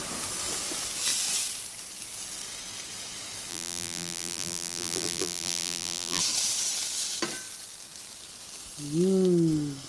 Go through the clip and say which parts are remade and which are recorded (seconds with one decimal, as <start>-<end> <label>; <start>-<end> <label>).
0.0-3.5 recorded; 3.5-6.2 remade; 6.2-9.9 recorded